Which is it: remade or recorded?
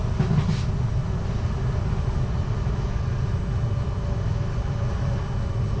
recorded